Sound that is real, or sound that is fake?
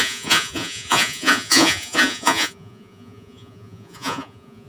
fake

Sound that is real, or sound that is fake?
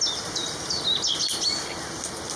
real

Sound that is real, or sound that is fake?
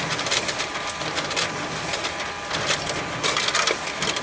real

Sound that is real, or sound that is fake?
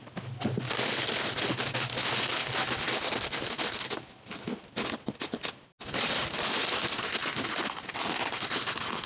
real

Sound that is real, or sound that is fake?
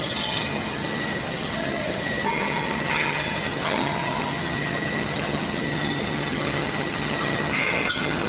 fake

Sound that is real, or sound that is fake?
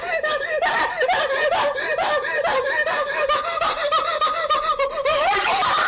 fake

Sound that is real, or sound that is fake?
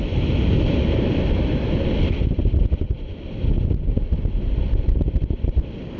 real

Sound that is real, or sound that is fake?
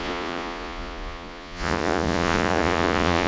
fake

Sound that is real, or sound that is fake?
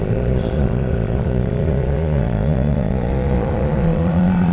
fake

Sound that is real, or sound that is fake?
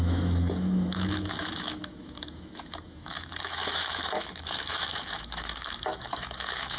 fake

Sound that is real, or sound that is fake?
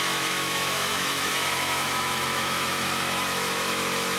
fake